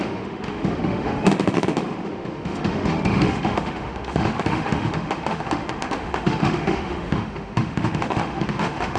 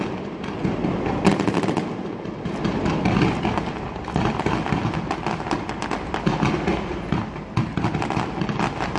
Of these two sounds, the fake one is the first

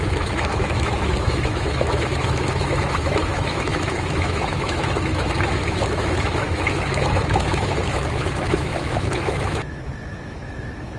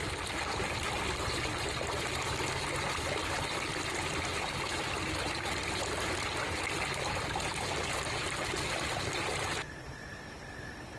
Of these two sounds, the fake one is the first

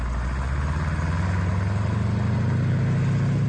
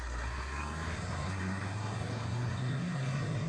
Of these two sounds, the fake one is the second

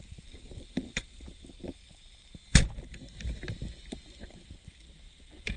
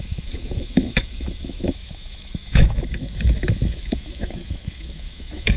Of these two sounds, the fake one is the second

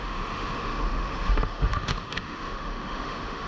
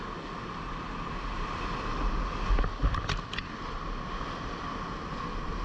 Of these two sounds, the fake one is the first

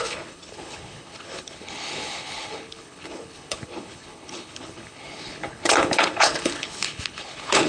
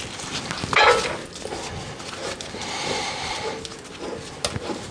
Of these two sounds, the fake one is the first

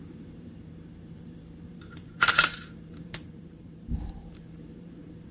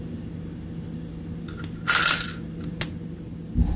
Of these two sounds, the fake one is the first